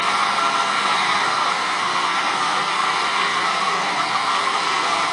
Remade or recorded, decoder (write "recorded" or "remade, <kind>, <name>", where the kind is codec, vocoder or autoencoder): remade, codec, SNAC